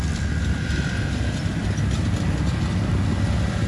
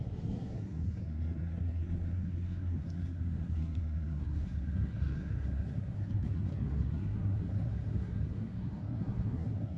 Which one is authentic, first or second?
first